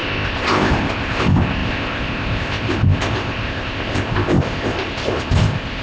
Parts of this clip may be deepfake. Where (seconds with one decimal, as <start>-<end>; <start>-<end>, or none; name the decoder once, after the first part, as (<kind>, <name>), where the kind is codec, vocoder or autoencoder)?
0.0-5.8 (codec, ZipCodec)